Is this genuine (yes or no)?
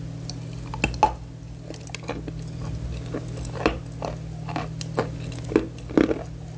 yes